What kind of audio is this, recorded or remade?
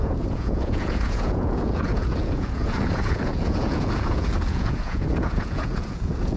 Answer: remade